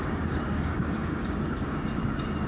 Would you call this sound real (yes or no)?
no